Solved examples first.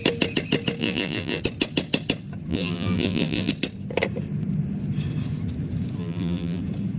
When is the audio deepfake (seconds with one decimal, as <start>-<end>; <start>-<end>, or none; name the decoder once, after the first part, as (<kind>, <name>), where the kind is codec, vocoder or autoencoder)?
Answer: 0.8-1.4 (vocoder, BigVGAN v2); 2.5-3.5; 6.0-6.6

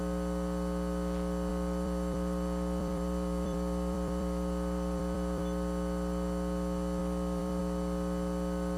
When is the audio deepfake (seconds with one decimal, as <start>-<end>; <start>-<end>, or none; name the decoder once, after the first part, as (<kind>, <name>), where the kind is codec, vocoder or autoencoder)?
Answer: 1.5-5.4 (vocoder, BigVGAN v2); 7.0-7.6

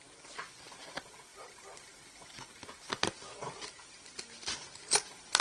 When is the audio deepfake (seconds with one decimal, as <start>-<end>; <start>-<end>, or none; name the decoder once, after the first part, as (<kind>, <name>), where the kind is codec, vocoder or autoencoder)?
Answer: none

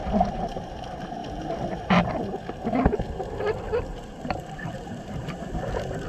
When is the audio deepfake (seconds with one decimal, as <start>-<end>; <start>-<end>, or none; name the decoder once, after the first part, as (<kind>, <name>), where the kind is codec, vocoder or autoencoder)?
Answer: 0.0-0.6 (vocoder, BigVGAN v2); 1.2-2.1; 3.9-5.6

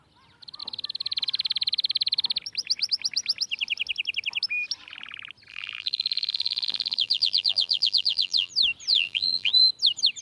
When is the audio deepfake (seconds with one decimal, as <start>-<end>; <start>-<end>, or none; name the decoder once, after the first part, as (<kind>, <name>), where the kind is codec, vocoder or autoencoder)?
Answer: 5.5-8.5 (vocoder, BigVGAN v2); 8.9-9.5